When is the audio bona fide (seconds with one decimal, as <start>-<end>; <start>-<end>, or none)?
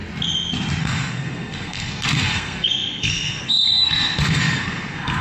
0.0-0.8